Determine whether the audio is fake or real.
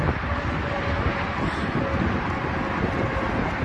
real